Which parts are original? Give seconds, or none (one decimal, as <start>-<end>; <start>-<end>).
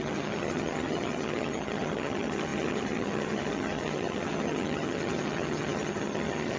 none